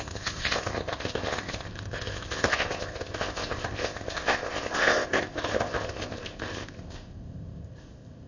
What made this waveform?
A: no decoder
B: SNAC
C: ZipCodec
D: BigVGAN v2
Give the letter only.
C